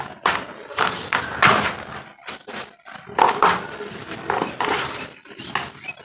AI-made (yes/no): no